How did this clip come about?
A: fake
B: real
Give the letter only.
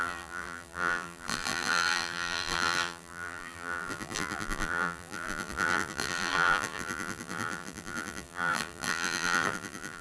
A